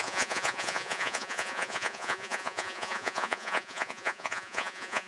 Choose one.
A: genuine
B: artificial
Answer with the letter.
B